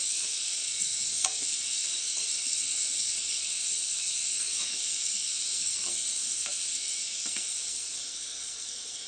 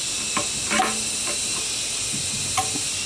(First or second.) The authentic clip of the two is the second